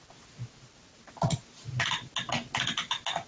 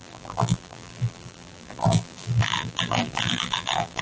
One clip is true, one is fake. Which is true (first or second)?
first